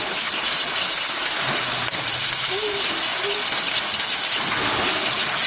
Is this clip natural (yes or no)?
yes